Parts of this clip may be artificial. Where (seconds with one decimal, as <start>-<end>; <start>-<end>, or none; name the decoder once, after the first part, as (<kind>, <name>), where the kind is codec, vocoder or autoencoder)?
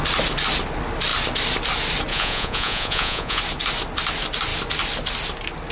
2.1-3.4 (vocoder, Vocos)